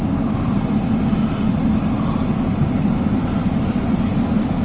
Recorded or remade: recorded